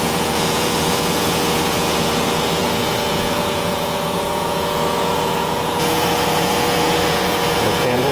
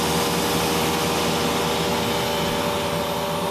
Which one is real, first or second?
second